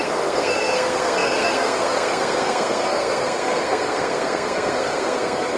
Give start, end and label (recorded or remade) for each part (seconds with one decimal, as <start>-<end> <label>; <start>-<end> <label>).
0.0-5.6 remade